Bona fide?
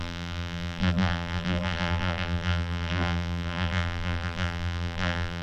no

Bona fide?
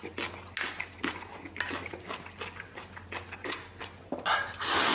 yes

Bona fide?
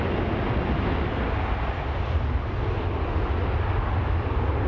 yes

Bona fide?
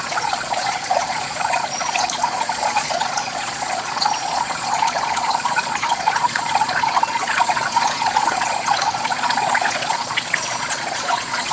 no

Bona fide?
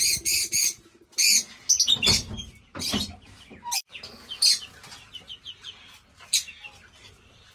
yes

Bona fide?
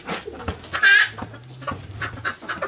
yes